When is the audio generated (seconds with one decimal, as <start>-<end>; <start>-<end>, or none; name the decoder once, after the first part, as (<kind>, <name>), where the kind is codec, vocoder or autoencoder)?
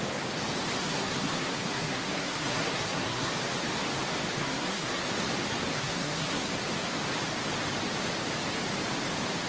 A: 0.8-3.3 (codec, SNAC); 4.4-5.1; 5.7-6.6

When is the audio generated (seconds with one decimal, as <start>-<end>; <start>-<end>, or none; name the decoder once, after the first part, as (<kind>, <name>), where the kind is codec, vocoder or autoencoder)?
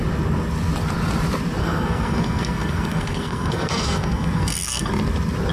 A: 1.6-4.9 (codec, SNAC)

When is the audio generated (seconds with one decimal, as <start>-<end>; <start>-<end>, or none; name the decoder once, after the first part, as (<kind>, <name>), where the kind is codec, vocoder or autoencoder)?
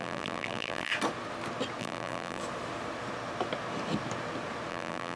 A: 0.0-0.9 (vocoder, BigVGAN v2); 1.8-2.4; 4.7-5.2